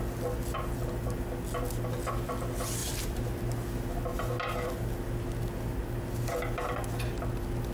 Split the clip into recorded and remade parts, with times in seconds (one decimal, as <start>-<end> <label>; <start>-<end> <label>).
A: 0.0-2.8 recorded; 2.8-3.3 remade; 3.3-7.7 recorded